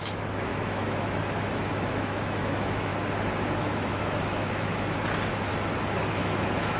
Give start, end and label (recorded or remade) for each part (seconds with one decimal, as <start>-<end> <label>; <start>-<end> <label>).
0.0-2.9 remade; 2.9-3.6 recorded; 3.6-5.5 remade; 5.5-6.1 recorded; 6.1-6.8 remade